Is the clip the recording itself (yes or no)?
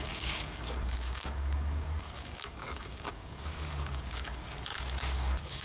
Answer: no